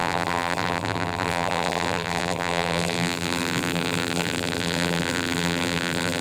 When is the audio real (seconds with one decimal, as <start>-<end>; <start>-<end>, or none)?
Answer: none